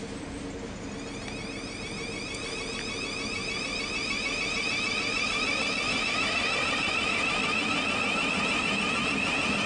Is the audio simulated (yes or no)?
no